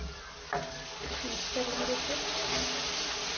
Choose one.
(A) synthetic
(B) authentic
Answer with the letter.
B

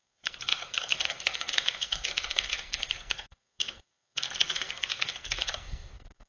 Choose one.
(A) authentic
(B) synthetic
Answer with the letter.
B